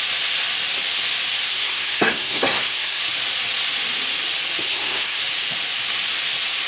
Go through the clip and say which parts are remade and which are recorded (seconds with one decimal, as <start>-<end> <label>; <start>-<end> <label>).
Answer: 0.0-1.5 recorded; 1.5-3.0 remade; 3.0-4.7 recorded; 4.7-5.2 remade; 5.2-6.7 recorded